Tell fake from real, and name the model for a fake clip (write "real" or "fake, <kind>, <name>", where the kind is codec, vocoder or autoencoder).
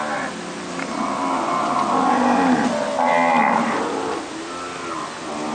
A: real